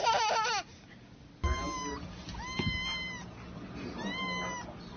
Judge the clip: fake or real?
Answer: real